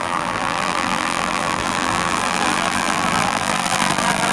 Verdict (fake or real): fake